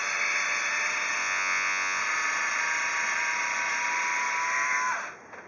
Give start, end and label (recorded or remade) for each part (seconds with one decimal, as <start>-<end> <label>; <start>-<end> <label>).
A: 0.0-1.2 recorded; 1.2-2.0 remade; 2.0-5.5 recorded